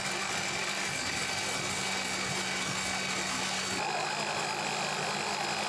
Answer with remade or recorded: recorded